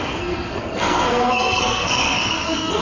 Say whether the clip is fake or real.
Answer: fake